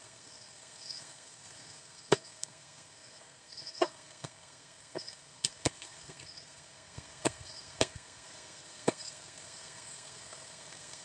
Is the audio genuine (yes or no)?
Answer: no